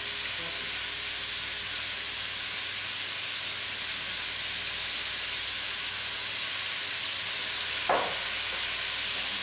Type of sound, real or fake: real